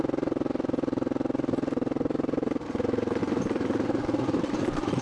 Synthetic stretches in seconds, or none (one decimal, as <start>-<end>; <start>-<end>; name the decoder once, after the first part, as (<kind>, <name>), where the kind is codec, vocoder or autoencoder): 3.2-5.0 (vocoder, BigVGAN v2)